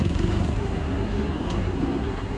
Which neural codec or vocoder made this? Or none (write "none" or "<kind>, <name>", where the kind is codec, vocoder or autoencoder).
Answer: codec, SNAC